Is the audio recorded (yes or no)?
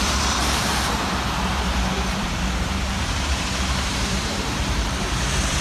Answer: no